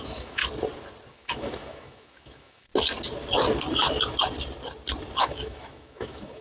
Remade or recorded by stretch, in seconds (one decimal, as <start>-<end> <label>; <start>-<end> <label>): 0.0-0.4 remade; 0.4-1.1 recorded; 1.1-2.7 remade; 2.7-5.2 recorded; 5.2-6.4 remade